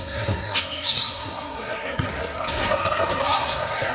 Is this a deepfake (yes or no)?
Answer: yes